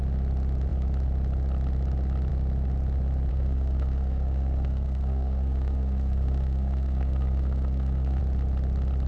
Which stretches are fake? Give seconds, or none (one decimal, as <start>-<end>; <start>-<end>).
3.3-8.2